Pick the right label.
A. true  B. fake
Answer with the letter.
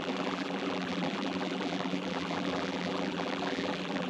B